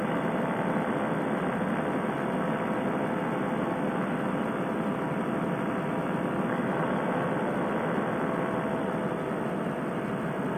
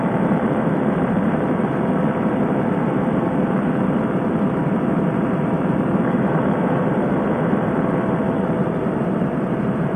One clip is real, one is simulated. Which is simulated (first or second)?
second